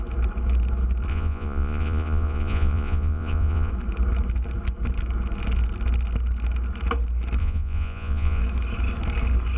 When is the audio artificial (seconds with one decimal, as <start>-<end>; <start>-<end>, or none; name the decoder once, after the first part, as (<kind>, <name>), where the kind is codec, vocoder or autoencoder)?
1.1-3.7 (vocoder, Vocos); 7.4-8.4